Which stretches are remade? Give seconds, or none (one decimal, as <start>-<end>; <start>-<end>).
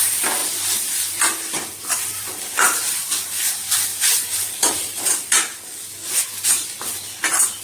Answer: none